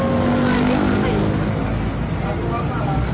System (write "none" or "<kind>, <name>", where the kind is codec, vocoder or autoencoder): none